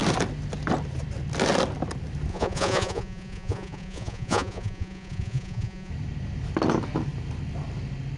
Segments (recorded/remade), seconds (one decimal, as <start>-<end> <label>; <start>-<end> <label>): 0.0-2.3 recorded; 2.3-5.9 remade; 5.9-8.2 recorded